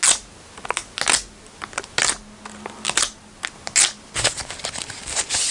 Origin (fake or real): real